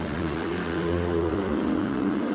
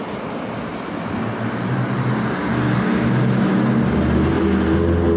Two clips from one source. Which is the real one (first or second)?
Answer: second